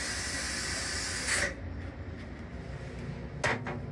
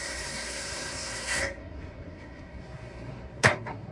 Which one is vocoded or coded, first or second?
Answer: second